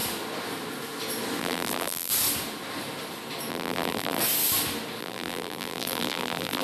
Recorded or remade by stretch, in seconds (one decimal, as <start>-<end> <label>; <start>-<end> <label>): 0.0-1.4 recorded; 1.4-2.1 remade; 2.1-3.5 recorded; 3.5-4.2 remade; 4.2-5.0 recorded; 5.0-6.6 remade